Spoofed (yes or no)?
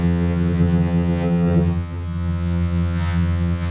yes